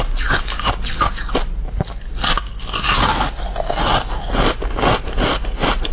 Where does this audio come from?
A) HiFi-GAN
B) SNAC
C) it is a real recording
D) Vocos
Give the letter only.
C